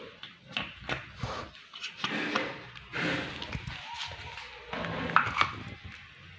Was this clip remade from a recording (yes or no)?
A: no